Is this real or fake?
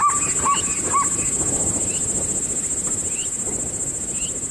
real